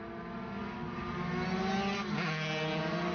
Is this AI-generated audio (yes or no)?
no